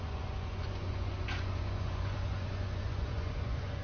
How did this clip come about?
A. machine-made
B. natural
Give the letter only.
A